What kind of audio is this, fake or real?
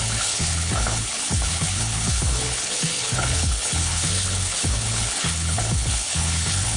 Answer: fake